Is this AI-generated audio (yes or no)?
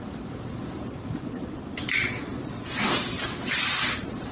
yes